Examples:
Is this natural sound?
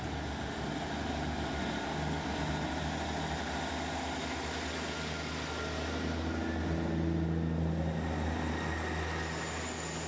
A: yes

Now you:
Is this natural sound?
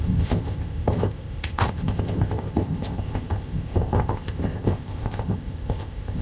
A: no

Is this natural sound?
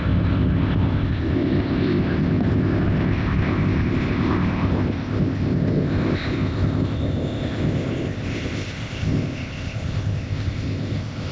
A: no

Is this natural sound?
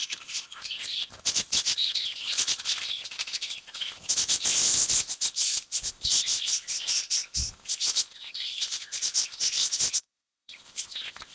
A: no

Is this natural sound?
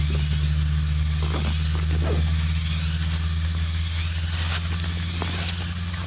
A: yes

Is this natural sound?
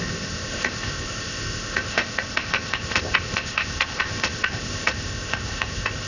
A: no